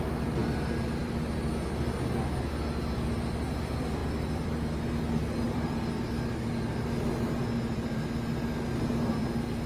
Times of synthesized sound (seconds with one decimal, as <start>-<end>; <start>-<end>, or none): 1.0-1.5; 4.0-6.0; 7.4-8.0